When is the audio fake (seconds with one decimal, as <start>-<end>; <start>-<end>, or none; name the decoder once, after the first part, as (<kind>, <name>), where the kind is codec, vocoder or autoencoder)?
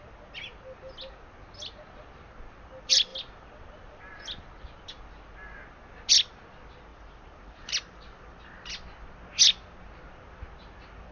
6.9-8.4 (vocoder, BigVGAN v2)